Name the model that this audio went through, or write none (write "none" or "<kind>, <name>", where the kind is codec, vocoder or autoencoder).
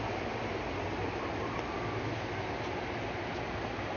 none